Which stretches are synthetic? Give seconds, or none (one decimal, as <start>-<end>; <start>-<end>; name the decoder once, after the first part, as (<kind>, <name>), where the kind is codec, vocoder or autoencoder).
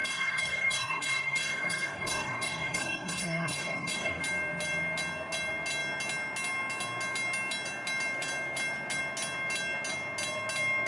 0.0-4.2 (codec, SNAC)